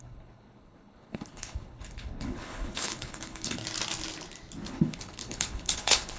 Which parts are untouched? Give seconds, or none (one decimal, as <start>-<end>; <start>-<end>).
3.6-4.7